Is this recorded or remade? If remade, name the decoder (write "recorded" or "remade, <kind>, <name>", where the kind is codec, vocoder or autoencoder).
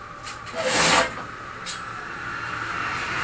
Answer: recorded